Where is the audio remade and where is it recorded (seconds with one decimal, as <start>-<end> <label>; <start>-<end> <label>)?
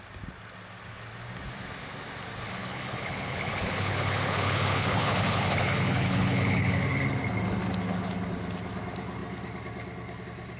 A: 0.0-2.6 recorded; 2.6-6.7 remade; 6.7-10.6 recorded